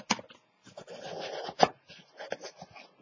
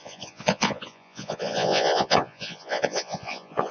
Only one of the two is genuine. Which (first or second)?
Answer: first